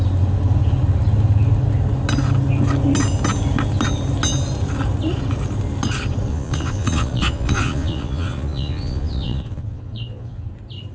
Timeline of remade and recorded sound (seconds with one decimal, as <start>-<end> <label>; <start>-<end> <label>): 0.0-6.3 recorded; 6.3-10.5 remade; 10.5-10.9 recorded